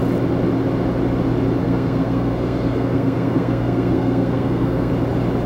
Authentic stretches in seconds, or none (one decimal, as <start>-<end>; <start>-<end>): 0.0-1.6; 4.9-5.5